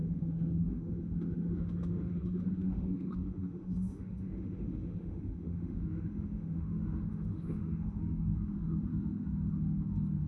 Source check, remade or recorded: remade